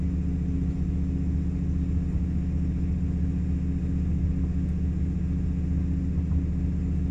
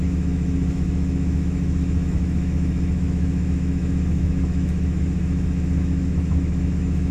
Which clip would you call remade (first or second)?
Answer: second